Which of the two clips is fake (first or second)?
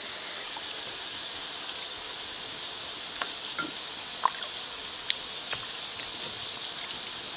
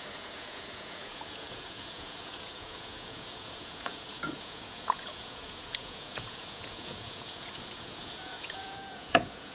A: second